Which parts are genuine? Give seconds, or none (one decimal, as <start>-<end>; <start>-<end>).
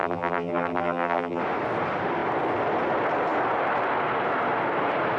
1.4-5.2